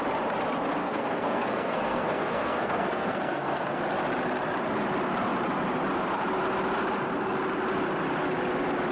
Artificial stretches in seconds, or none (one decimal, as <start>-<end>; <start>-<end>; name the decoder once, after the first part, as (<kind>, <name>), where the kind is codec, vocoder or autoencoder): 0.8-3.8 (codec, SNAC)